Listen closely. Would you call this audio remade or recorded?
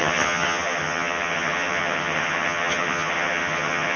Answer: remade